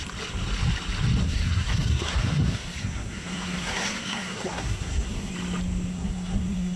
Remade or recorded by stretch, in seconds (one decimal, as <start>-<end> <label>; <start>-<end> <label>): 0.0-1.2 recorded; 1.2-5.3 remade; 5.3-5.9 recorded; 5.9-6.8 remade